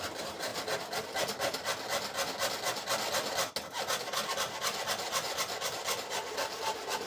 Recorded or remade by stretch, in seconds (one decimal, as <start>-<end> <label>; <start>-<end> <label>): 0.0-7.1 recorded